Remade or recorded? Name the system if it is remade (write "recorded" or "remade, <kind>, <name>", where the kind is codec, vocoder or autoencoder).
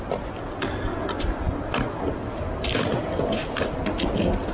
recorded